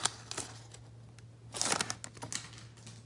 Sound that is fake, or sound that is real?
real